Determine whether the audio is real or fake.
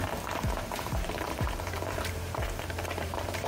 fake